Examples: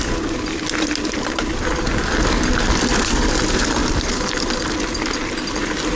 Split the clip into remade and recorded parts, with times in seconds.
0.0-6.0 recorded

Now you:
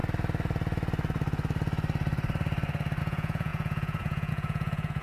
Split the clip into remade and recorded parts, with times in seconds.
0.0-3.0 recorded; 3.0-5.0 remade